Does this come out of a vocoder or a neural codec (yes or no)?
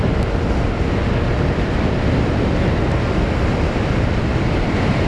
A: no